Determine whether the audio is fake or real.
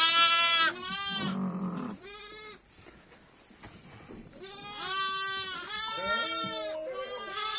real